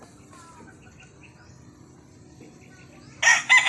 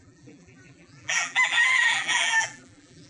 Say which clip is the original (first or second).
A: first